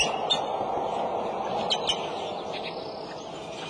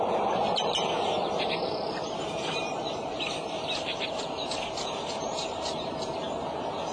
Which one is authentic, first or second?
first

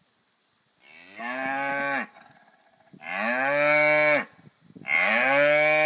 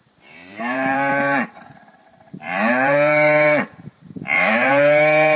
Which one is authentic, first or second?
first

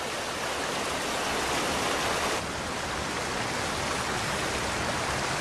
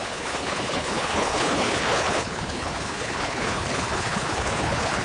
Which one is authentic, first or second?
first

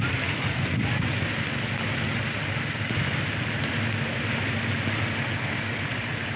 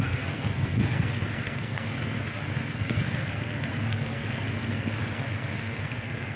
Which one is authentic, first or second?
first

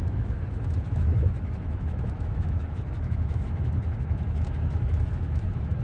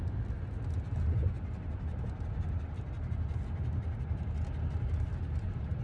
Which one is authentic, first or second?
second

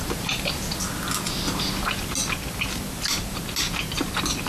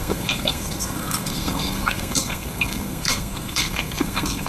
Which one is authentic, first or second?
first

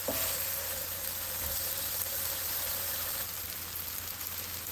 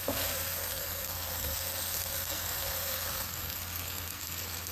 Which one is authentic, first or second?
first